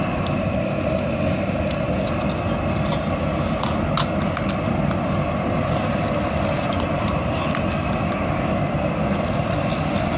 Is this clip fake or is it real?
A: real